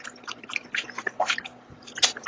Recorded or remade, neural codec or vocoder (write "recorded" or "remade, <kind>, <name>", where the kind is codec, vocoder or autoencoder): recorded